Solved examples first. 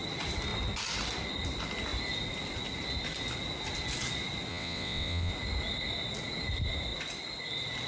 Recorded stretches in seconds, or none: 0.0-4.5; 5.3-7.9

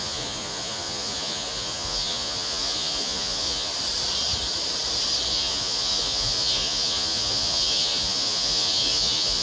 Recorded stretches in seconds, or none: 3.7-5.3

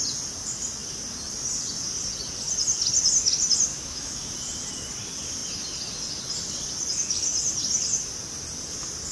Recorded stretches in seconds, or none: 0.0-3.7; 4.3-9.1

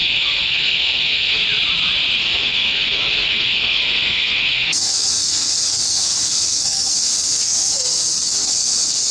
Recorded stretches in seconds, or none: 1.4-2.2